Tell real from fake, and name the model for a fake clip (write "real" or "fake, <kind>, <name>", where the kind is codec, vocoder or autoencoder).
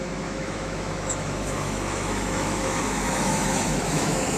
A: fake, autoencoder, DAC-VAE